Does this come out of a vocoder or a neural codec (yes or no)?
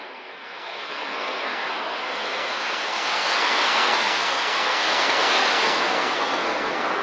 yes